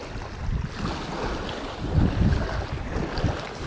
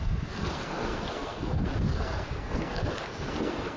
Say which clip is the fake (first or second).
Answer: second